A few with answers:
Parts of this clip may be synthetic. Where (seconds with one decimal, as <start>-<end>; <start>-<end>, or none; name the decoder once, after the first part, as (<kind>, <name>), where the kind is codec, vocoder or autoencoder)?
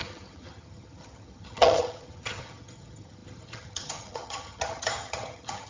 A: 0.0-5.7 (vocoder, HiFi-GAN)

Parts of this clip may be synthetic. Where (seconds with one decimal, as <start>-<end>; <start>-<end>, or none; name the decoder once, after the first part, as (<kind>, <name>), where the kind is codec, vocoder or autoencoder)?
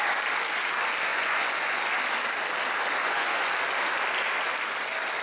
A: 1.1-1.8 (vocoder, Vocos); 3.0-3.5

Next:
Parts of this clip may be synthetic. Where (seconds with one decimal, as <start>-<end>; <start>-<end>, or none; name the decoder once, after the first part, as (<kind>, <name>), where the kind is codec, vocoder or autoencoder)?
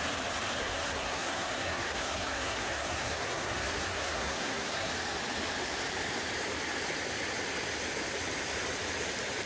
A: 0.6-4.9 (codec, SNAC)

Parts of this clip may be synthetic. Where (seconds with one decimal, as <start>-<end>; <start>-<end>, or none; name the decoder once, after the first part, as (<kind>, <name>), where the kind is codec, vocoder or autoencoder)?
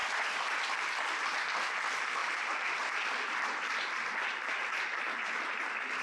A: 0.0-1.2 (vocoder, BigVGAN v2); 2.2-4.7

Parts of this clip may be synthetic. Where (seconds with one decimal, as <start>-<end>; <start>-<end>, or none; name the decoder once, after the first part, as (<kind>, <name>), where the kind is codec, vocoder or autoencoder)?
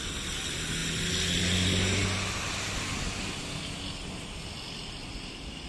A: none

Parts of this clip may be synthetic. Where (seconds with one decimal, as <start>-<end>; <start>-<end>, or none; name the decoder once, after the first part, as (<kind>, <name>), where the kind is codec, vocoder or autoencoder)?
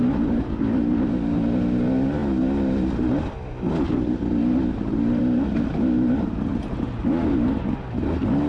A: none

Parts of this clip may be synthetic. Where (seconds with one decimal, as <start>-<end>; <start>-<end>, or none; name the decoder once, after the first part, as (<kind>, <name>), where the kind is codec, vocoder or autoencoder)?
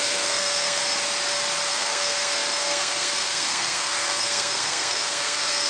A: 0.0-0.8 (codec, SNAC); 1.7-5.7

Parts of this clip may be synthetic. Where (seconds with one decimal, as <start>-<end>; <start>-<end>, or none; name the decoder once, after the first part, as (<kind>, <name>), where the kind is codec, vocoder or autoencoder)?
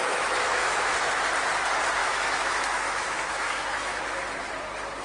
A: 0.0-1.1 (autoencoder, DAC-VAE); 2.0-4.0